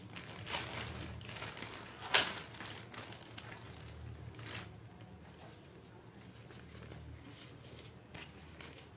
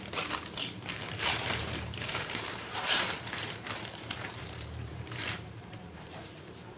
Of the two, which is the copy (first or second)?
second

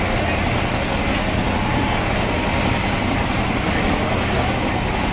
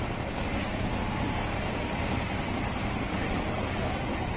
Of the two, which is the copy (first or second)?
second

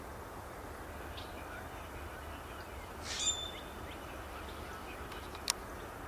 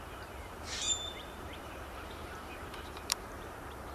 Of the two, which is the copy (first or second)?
second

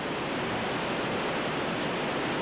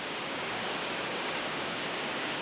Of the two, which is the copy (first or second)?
second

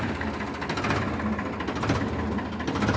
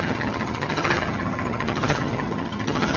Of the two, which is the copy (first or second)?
second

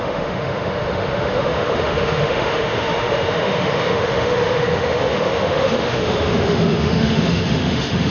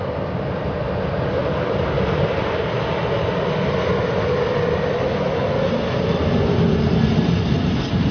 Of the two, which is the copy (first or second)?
first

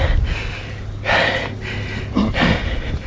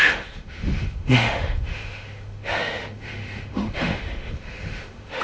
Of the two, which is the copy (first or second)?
second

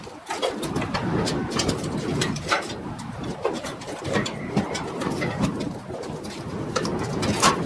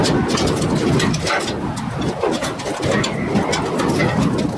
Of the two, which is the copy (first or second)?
first